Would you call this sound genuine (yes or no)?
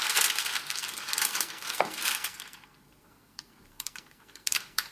no